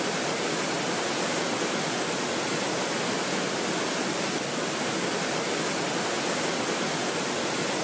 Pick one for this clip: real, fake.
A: real